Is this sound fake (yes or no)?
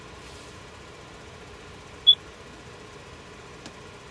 no